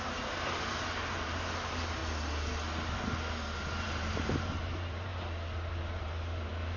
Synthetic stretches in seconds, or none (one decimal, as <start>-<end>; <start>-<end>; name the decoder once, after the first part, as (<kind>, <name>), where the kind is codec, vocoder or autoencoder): 0.0-2.0 (vocoder, BigVGAN v2); 3.8-5.1; 6.0-6.8